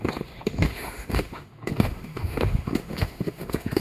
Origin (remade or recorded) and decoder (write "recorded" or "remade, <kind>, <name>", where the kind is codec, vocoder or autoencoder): remade, autoencoder, DAC-VAE